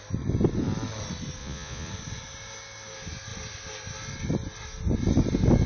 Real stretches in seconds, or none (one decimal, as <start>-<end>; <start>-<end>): 0.0-1.4; 1.9-5.7